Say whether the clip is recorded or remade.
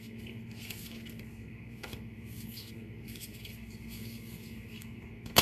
remade